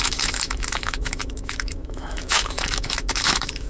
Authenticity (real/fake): fake